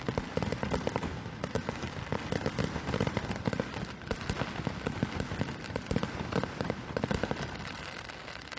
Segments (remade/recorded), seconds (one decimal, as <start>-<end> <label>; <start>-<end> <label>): 0.0-1.1 recorded; 1.1-1.7 remade; 1.7-8.6 recorded